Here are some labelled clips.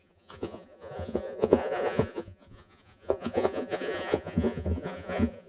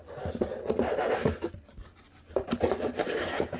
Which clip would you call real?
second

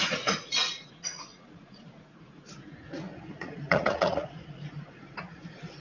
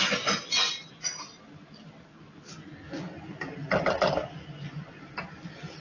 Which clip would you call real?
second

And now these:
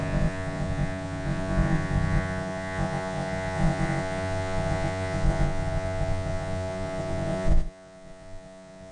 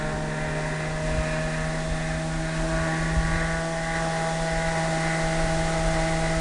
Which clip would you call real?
second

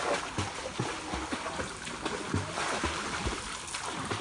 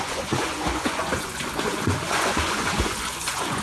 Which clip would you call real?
first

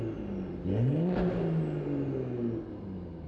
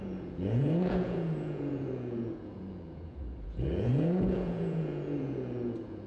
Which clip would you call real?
first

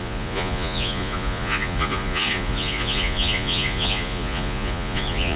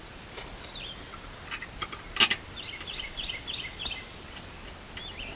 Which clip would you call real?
second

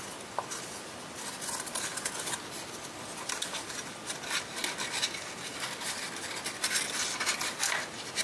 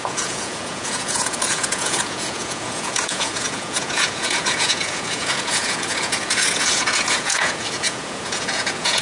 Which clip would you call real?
first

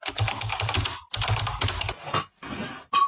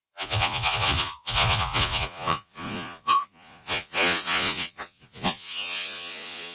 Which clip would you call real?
first